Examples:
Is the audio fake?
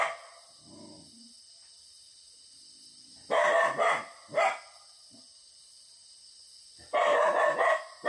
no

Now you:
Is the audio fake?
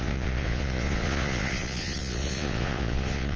yes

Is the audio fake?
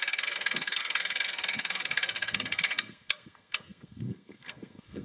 yes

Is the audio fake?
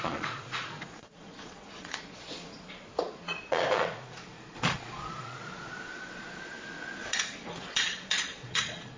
yes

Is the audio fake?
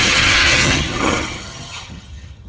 yes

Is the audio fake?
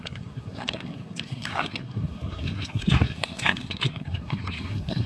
yes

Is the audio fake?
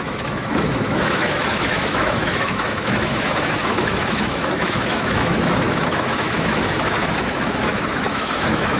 yes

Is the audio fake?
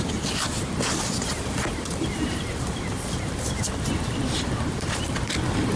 yes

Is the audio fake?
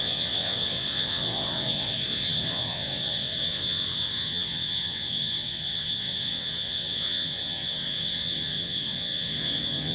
yes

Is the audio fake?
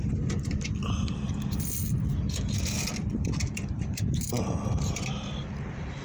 yes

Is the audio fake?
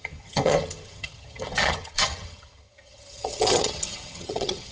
yes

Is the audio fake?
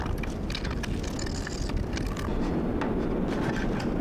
no